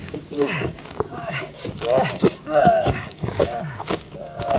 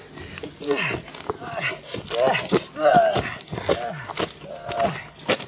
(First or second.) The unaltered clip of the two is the second